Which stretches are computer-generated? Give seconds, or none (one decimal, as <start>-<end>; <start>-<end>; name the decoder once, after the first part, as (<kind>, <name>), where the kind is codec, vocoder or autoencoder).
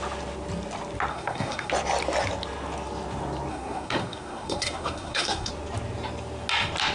1.1-1.7 (codec, SNAC); 3.5-5.5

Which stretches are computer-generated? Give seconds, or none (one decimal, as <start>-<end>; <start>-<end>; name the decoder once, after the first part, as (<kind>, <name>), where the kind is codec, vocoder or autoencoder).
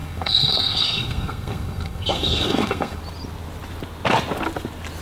0.0-3.0 (codec, SNAC)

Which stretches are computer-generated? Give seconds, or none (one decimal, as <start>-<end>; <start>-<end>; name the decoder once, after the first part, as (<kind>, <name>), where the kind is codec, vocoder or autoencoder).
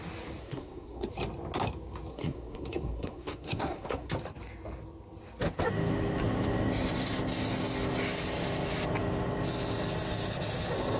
0.4-1.1 (codec, SNAC); 2.1-4.1